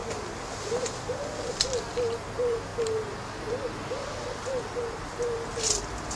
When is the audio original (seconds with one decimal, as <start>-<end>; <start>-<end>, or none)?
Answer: 0.0-6.2